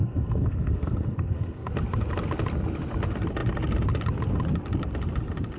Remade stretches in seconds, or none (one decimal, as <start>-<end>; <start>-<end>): 0.0-1.7